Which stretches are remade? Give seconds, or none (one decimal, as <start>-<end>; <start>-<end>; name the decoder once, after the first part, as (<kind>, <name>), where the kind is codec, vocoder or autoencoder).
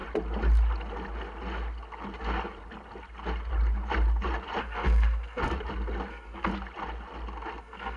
4.6-5.4 (codec, SNAC); 6.1-6.5; 7.6-8.0